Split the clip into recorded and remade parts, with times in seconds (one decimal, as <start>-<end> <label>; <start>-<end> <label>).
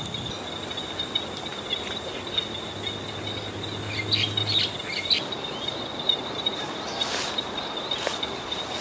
0.0-8.8 recorded